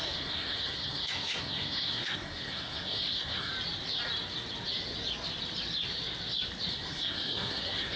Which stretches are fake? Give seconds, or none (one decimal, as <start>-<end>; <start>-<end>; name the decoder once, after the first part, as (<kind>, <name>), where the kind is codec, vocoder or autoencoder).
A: 0.0-3.5 (codec, SNAC); 6.7-8.0